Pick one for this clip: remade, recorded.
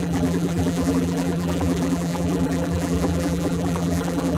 remade